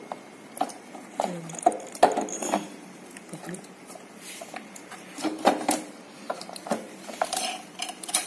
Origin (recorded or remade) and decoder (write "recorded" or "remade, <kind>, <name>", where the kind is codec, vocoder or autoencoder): remade, vocoder, BigVGAN v2